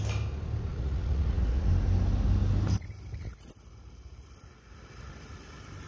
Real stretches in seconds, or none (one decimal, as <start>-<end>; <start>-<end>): 0.0-0.7; 1.7-5.9